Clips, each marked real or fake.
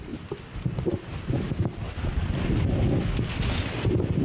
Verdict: real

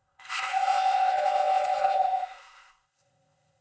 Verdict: fake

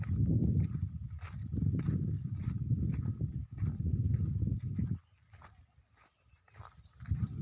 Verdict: real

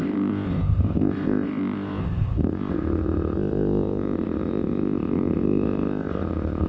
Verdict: fake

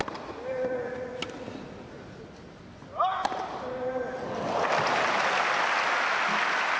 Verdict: real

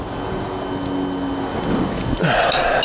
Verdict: real